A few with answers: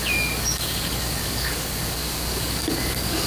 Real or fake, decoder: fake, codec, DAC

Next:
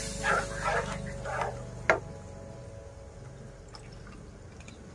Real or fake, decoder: real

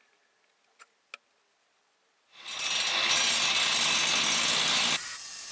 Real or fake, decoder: real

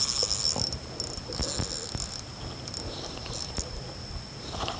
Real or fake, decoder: real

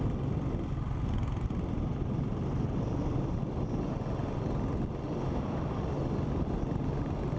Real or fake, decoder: real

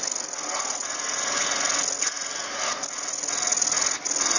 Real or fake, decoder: real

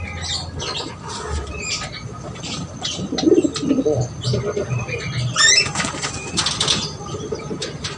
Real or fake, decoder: real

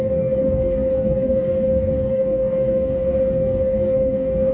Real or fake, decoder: fake, codec, DAC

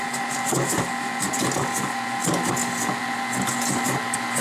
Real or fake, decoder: real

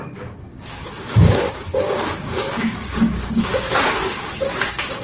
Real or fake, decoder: fake, codec, DAC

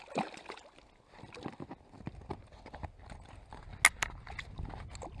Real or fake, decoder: real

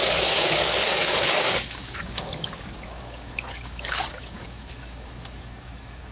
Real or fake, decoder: fake, codec, DAC